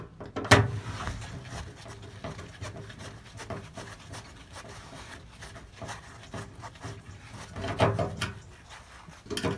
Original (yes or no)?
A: yes